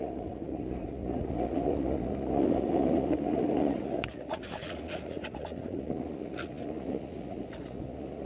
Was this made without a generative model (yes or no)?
no